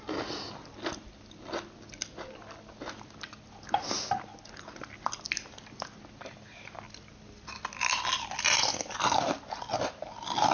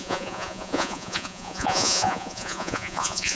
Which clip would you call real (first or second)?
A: first